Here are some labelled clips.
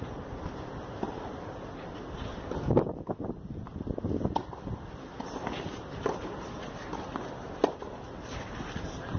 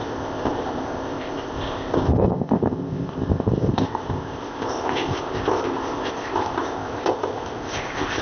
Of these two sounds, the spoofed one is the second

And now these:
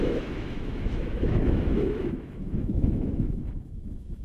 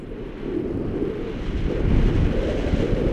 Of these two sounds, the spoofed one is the first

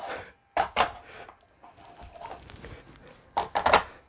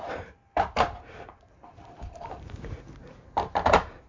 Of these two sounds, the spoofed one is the second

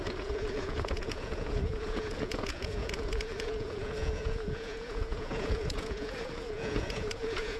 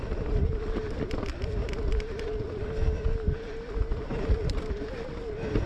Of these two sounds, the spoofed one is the first